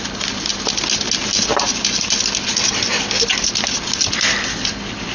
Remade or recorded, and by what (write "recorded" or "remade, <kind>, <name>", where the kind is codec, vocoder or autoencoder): recorded